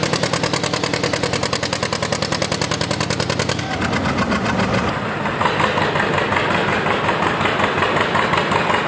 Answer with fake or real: real